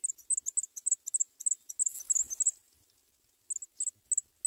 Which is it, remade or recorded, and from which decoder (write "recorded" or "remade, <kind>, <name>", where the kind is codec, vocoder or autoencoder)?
recorded